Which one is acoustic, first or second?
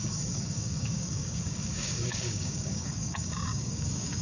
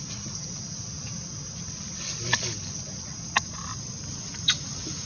second